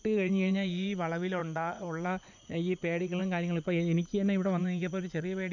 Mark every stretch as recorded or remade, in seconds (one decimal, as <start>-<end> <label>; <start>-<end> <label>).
0.0-5.5 remade